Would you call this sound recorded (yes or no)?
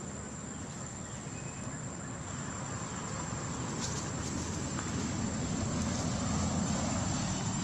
yes